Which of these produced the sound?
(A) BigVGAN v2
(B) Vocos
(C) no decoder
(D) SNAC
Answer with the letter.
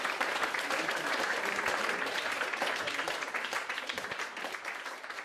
A